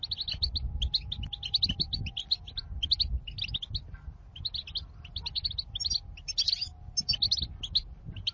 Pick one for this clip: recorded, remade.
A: recorded